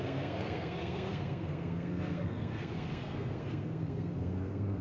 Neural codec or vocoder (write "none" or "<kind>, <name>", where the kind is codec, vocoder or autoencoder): codec, SNAC